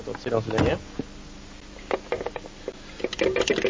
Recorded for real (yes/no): yes